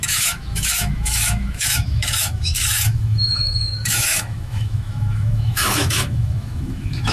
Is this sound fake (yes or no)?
yes